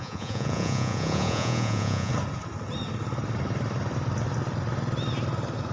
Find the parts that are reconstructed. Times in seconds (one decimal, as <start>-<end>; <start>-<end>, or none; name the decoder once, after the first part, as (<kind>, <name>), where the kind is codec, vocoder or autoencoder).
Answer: 0.0-2.1 (vocoder, Vocos)